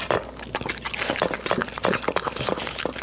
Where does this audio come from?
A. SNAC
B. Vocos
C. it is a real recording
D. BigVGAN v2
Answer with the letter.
C